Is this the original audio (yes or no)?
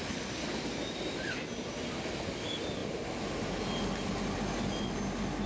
yes